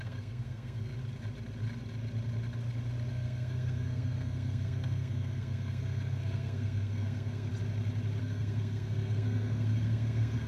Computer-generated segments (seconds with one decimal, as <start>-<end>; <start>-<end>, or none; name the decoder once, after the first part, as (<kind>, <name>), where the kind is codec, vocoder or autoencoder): 0.0-0.9 (codec, SNAC); 3.1-7.5; 8.2-10.5